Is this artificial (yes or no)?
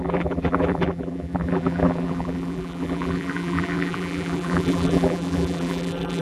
yes